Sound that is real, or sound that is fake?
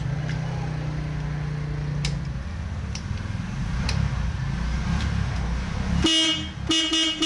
real